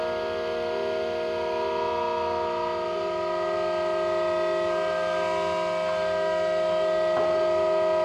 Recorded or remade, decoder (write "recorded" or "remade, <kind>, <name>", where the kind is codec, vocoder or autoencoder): recorded